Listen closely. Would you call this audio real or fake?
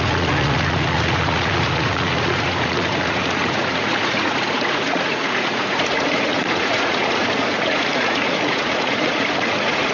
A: fake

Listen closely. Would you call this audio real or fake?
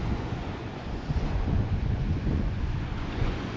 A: fake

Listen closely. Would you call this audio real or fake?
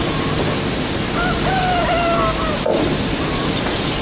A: real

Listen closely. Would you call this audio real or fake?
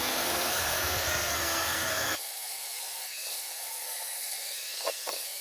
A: fake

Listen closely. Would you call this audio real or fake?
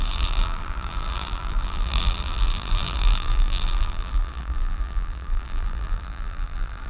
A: fake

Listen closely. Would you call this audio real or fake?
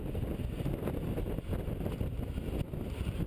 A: real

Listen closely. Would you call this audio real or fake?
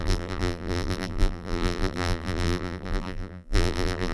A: fake